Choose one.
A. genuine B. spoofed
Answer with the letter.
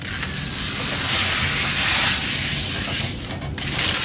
A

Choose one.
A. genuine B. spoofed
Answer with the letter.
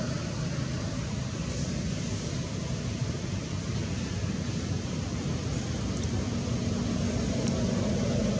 A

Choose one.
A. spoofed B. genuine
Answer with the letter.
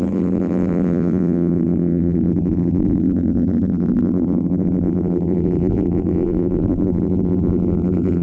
A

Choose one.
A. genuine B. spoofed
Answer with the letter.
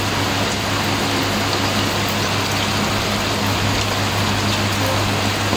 A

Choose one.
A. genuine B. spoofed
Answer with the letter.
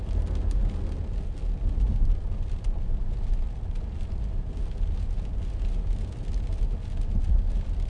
A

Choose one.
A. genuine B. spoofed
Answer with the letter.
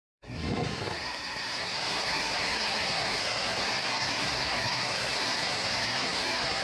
B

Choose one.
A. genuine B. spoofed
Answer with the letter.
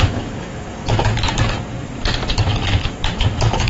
B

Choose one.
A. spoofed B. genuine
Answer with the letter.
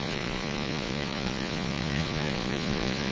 A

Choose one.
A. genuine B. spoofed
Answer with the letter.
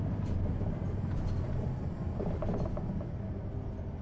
A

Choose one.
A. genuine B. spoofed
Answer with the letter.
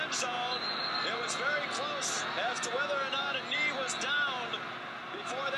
A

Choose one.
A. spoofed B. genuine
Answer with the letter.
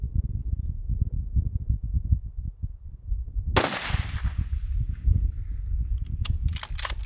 B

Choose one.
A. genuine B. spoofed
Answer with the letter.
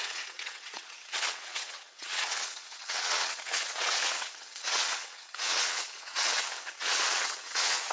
B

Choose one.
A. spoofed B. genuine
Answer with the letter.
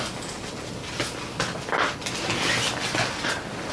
B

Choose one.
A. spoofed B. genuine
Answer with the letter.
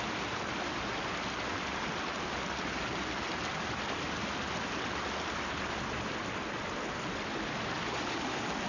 B